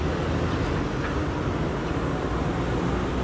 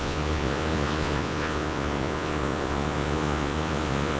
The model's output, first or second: second